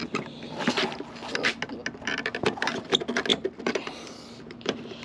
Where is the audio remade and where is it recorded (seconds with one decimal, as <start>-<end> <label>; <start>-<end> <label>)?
0.0-3.3 recorded; 3.3-5.0 remade